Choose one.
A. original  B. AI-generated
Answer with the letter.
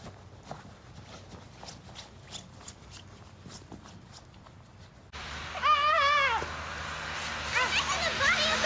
A